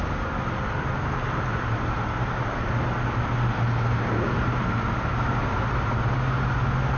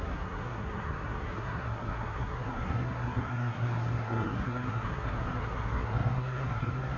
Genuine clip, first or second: first